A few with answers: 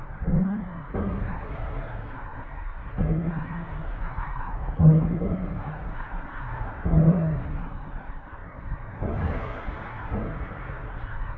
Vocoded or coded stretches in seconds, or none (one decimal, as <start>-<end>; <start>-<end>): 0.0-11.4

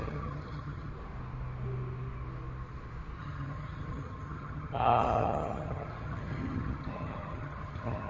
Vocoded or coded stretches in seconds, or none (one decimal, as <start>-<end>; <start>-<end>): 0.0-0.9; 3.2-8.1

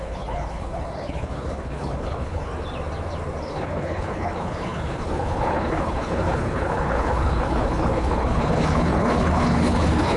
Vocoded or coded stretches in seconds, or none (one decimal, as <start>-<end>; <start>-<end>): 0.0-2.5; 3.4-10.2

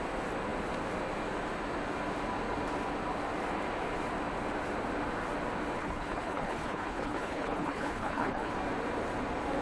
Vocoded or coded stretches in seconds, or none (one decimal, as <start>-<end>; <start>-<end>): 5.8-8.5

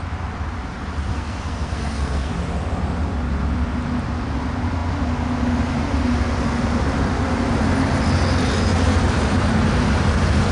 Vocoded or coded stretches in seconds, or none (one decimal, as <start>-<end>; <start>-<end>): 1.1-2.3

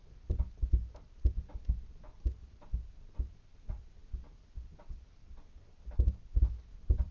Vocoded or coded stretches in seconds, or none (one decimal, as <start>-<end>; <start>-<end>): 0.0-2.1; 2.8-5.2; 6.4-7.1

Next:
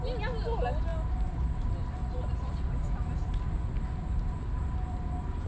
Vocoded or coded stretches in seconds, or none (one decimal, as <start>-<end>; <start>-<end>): none

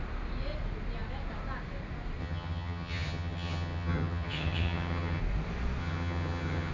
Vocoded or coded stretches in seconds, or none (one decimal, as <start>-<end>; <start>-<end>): 2.2-5.2; 5.8-6.7